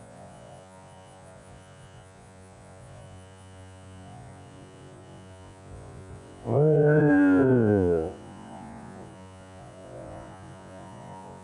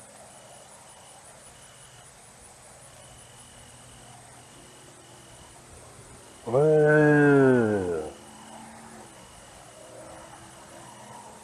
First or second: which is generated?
first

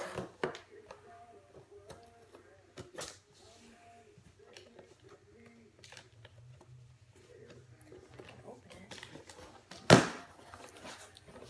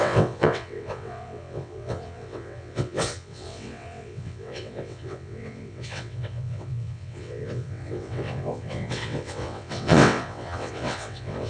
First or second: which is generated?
second